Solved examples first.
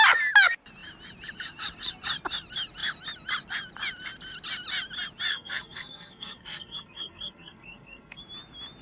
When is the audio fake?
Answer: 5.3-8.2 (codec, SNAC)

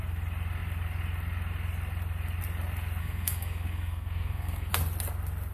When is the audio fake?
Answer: 3.0-4.7 (codec, SNAC)

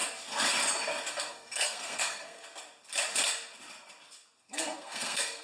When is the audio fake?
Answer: 1.1-2.4 (codec, SNAC); 4.4-5.4